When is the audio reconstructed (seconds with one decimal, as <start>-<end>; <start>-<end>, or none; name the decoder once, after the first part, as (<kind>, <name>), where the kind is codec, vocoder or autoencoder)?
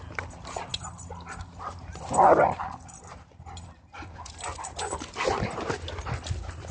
none